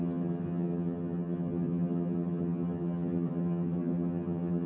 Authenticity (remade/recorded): remade